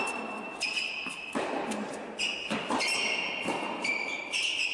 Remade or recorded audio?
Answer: recorded